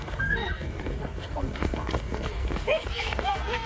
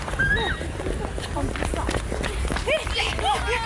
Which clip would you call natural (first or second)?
second